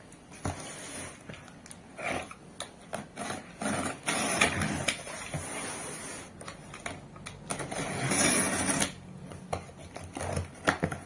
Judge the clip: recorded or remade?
recorded